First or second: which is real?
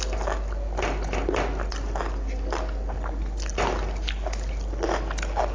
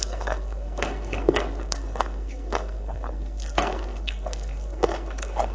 first